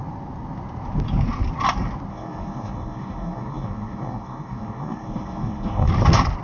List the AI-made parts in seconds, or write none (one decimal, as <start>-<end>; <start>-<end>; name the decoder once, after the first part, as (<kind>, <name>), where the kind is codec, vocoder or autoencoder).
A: 2.1-5.9 (codec, SNAC)